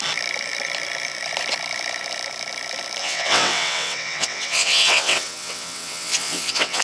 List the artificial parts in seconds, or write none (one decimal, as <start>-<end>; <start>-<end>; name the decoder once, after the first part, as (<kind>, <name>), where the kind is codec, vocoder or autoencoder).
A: 3.0-6.8 (vocoder, WaveNeXt)